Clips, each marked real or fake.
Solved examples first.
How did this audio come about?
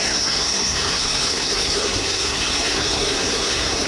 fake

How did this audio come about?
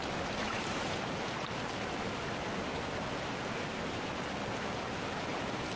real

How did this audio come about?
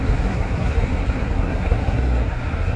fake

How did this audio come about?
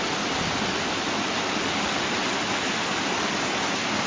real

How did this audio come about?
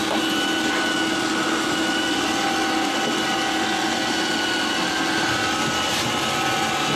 real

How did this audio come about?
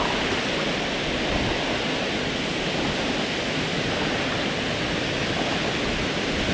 real